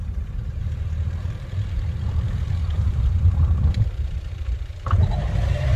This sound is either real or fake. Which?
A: fake